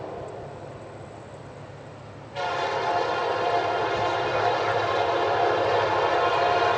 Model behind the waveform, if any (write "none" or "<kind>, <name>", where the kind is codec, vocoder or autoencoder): vocoder, BigVGAN v2